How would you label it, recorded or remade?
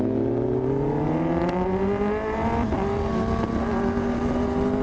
recorded